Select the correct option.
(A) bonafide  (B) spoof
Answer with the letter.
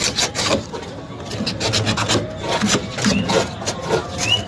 A